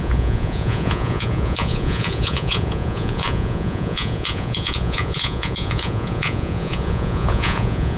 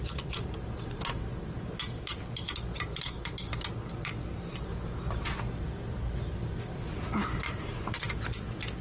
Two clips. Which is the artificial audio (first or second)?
first